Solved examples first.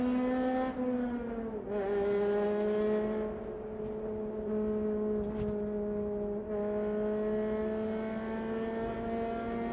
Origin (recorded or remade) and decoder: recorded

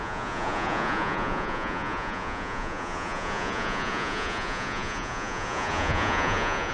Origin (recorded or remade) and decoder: remade, vocoder, Vocos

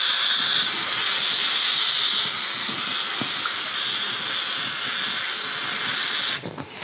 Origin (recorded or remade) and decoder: recorded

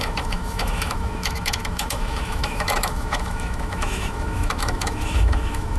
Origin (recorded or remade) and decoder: remade, autoencoder, DAC-VAE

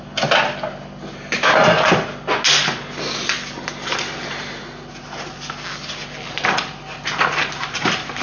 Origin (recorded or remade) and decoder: recorded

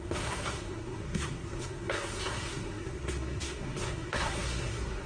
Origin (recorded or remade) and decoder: remade, codec, SNAC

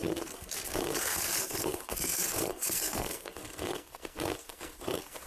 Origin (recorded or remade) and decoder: remade, codec, SNAC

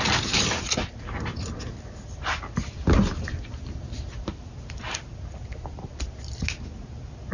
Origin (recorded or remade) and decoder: recorded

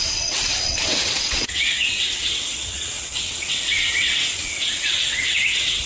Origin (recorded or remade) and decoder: remade, vocoder, WaveNeXt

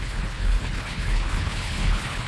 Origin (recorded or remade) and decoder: remade, codec, HILCodec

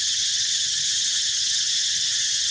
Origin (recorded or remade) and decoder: remade, vocoder, HiFi-GAN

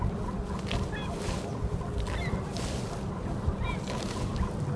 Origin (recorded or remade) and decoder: recorded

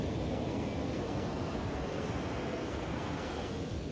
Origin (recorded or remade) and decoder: remade, codec, SNAC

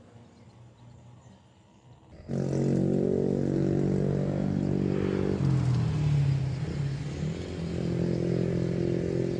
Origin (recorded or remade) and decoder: recorded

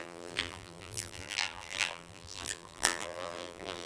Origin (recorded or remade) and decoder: remade, vocoder, BigVGAN v2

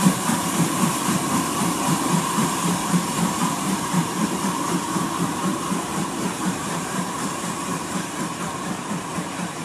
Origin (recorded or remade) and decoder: remade, vocoder, BigVGAN v2